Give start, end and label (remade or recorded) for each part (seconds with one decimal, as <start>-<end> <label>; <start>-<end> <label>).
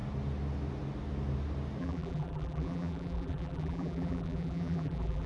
0.0-1.8 recorded; 1.8-5.3 remade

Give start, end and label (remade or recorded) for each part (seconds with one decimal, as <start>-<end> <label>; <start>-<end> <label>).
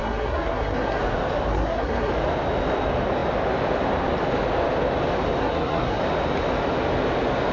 0.0-1.0 remade; 1.0-1.5 recorded; 1.5-2.1 remade; 2.1-5.4 recorded; 5.4-6.0 remade; 6.0-7.5 recorded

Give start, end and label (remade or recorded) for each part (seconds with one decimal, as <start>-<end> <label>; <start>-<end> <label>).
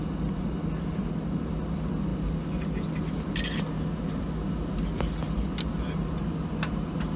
0.0-7.2 recorded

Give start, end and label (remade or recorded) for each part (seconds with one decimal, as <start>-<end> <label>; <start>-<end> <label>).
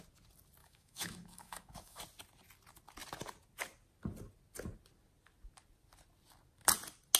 0.0-0.6 recorded; 0.6-2.0 remade; 2.0-7.2 recorded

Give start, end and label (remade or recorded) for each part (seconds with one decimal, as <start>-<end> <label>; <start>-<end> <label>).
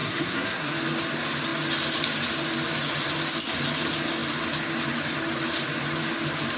0.0-0.7 remade; 0.7-6.6 recorded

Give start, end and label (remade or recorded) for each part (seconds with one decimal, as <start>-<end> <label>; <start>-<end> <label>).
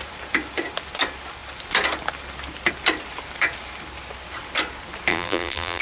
0.0-5.1 recorded; 5.1-5.8 remade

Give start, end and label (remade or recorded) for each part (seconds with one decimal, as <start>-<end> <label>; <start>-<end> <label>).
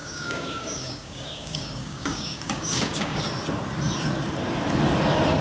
0.0-3.2 remade; 3.2-5.4 recorded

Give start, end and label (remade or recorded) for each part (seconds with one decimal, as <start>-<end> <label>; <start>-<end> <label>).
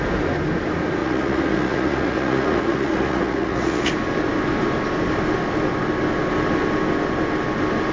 0.0-1.0 recorded; 1.0-3.9 remade; 3.9-7.9 recorded